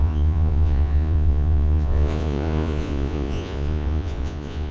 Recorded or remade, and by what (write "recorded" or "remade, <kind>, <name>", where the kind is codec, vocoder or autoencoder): remade, vocoder, Vocos